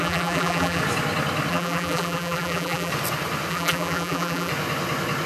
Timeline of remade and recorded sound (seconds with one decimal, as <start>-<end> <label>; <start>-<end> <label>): 0.0-0.8 remade; 0.8-1.5 recorded; 1.5-2.9 remade; 2.9-3.5 recorded; 3.5-4.5 remade; 4.5-5.3 recorded